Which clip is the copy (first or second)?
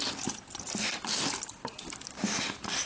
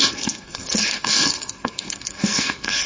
second